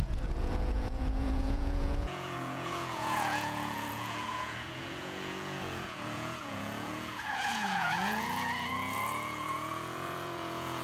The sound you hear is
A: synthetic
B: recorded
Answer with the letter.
A